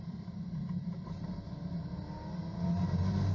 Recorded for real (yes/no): no